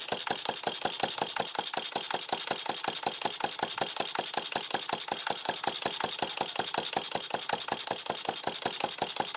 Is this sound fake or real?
real